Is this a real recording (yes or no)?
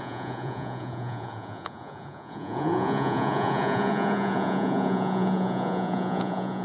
no